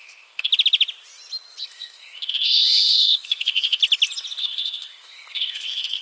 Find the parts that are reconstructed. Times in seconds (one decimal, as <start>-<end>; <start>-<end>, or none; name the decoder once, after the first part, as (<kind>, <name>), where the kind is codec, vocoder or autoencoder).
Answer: 0.0-0.5 (codec, ZipCodec); 1.6-3.8; 4.4-6.0